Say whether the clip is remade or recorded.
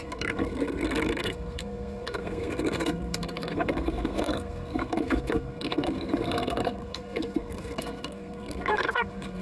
remade